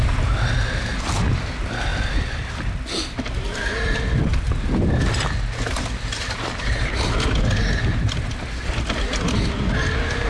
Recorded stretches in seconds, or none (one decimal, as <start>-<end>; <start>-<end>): 0.0-10.3